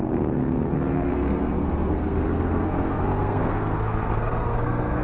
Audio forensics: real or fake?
fake